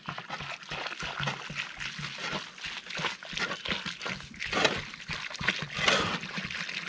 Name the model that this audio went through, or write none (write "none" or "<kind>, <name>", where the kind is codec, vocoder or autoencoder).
none